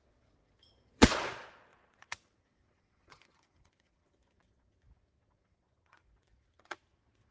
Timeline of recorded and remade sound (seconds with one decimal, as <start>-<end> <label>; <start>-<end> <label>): 0.0-7.3 remade